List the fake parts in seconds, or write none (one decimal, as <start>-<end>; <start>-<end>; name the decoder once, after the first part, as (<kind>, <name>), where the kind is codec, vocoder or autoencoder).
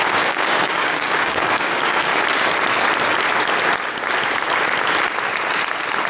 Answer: 0.0-2.1 (codec, DAC)